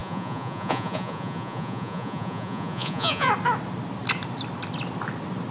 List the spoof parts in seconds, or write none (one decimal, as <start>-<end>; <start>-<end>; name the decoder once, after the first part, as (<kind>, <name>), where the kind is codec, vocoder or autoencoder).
0.0-3.3 (vocoder, Vocos)